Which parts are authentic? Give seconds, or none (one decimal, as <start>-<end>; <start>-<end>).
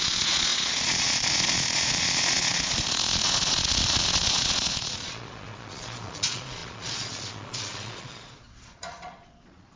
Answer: none